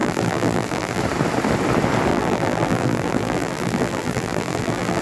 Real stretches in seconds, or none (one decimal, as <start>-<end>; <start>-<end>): 1.0-2.1